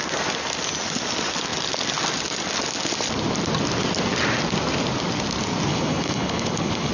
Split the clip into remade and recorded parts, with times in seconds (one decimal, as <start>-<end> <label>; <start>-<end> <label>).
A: 0.0-5.7 recorded; 5.7-6.9 remade